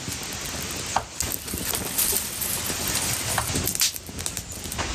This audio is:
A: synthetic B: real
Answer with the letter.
B